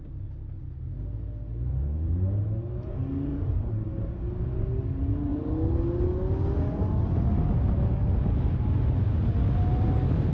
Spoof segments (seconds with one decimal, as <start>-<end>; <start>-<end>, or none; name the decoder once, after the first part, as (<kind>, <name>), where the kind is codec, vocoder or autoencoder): 3.3-4.1 (vocoder, BigVGAN v2)